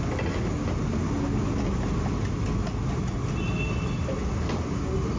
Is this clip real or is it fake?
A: real